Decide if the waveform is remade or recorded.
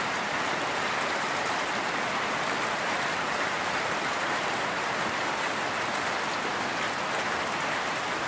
recorded